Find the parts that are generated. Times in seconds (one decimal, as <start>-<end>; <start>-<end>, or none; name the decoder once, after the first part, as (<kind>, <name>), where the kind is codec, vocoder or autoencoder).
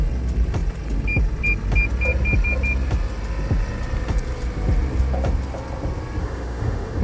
6.2-7.0 (autoencoder, DAC-VAE)